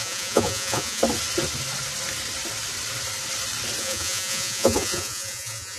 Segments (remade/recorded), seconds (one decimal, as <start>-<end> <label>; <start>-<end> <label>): 0.0-1.0 remade; 1.0-3.8 recorded; 3.8-5.8 remade